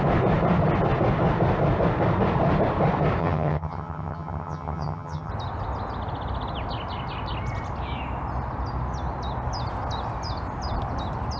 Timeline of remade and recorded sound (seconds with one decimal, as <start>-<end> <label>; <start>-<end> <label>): 0.0-3.2 recorded; 3.2-5.3 remade; 5.3-11.4 recorded